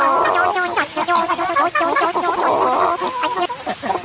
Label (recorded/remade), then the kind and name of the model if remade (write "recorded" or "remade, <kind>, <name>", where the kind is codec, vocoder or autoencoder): recorded